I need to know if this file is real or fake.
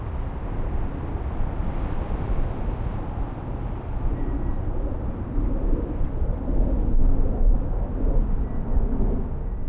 real